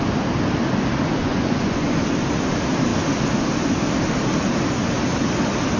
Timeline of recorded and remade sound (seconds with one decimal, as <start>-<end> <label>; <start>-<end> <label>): 0.0-1.2 recorded; 1.2-2.0 remade; 2.0-5.8 recorded